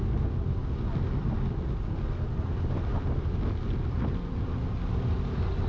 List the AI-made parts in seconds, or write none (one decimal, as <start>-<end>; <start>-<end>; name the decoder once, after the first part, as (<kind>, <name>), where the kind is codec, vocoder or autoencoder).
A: none